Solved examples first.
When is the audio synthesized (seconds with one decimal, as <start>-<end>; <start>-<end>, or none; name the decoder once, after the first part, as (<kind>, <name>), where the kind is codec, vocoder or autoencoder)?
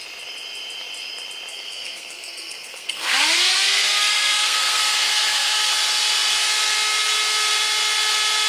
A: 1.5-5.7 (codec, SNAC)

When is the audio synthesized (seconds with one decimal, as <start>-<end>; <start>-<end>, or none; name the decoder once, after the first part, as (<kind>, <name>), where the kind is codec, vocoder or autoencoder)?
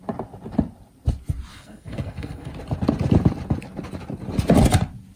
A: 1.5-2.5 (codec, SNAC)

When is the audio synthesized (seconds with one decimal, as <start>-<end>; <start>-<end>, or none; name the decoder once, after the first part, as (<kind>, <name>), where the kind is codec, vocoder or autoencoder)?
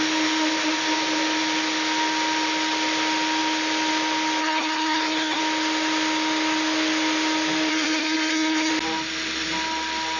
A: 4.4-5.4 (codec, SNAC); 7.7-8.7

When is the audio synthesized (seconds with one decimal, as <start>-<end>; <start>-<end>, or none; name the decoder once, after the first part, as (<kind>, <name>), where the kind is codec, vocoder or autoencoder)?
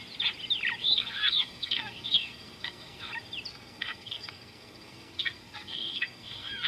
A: 0.8-3.1 (codec, SNAC); 3.5-6.7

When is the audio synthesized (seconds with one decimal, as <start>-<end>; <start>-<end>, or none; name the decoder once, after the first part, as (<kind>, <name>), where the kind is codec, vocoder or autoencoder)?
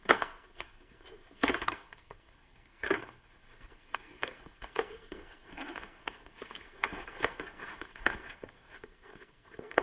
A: 0.0-9.8 (codec, SNAC)